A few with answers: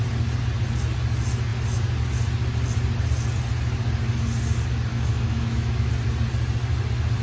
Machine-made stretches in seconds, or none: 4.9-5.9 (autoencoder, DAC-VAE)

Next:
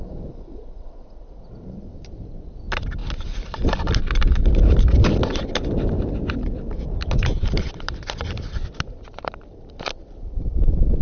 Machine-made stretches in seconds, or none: 0.0-11.0 (vocoder, BigVGAN v2)

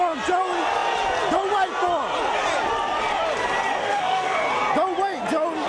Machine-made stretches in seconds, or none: 3.8-4.4 (autoencoder, DAC-VAE)

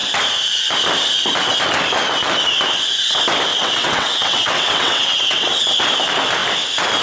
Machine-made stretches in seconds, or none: 3.5-5.8 (vocoder, WaveNeXt)